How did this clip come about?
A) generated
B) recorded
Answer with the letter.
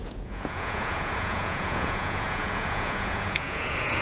A